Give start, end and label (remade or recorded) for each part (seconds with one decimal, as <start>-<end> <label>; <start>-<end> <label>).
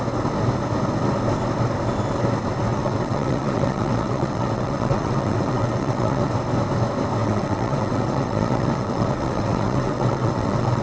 0.0-2.7 recorded; 2.7-6.3 remade; 6.3-7.2 recorded; 7.2-10.8 remade